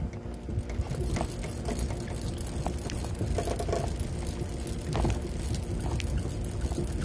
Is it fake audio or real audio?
real